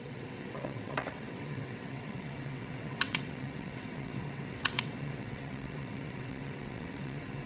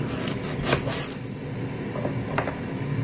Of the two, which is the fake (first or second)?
first